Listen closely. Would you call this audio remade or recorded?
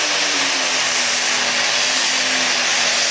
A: recorded